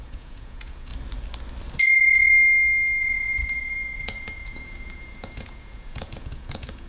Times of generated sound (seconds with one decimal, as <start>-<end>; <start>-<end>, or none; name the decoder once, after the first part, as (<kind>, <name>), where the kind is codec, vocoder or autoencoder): 0.0-0.9 (vocoder, Vocos); 1.8-2.3; 3.0-6.9